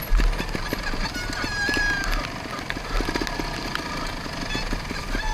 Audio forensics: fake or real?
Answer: real